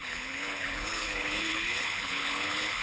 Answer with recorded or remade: remade